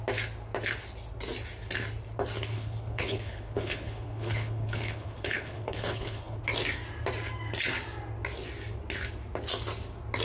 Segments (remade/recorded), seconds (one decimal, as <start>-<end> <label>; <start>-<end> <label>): 0.0-2.5 recorded; 2.5-6.4 remade; 6.4-10.2 recorded